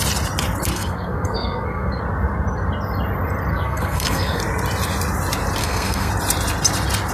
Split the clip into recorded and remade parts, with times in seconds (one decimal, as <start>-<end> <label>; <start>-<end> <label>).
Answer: 0.0-0.7 recorded; 0.7-2.0 remade; 2.0-3.5 recorded; 3.5-4.4 remade; 4.4-5.6 recorded; 5.6-6.1 remade; 6.1-7.1 recorded